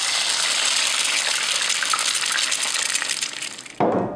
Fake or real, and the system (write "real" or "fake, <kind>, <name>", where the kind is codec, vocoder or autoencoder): real